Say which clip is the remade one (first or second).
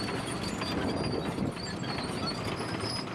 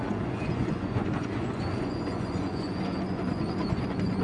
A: second